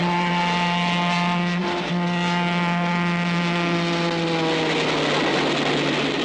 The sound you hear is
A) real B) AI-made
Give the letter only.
A